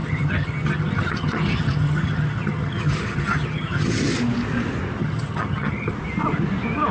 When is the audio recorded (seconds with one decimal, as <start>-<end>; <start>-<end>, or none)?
4.1-5.0; 5.9-6.9